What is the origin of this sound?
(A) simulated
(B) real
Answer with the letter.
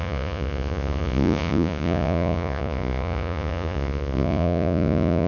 A